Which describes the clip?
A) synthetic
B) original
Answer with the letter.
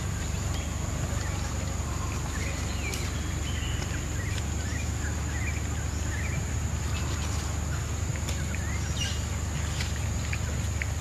B